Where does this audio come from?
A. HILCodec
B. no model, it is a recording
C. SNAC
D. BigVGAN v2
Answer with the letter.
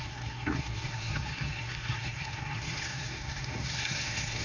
C